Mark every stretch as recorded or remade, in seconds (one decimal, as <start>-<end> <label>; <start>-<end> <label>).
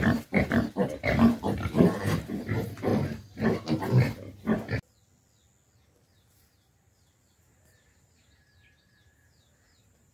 0.0-2.9 remade; 2.9-7.4 recorded; 7.4-10.1 remade